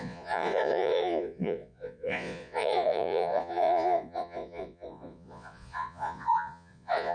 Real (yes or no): no